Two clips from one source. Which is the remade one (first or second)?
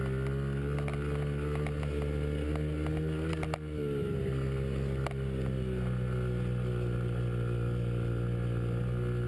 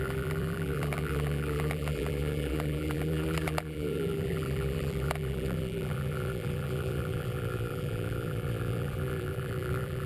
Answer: second